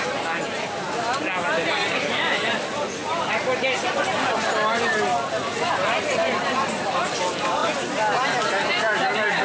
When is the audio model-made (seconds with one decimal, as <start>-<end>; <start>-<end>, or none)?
none